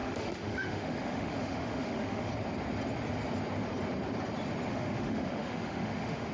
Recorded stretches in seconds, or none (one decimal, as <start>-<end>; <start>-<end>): 2.3-4.7